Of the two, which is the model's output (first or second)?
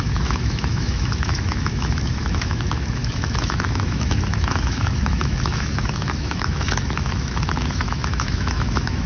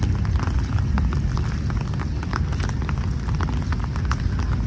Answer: first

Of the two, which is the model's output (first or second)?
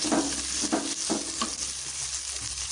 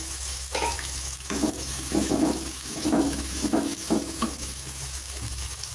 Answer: second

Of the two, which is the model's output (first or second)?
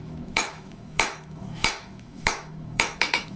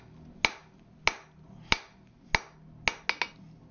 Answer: first